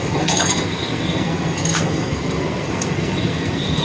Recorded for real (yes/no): no